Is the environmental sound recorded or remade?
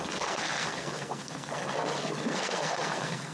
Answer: remade